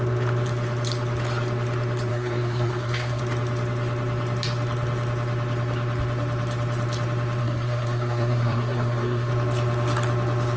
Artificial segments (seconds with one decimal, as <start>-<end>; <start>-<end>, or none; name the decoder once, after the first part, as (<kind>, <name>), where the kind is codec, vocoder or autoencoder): 2.1-3.2 (codec, SNAC); 7.4-9.3